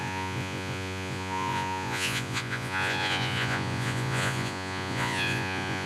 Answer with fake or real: fake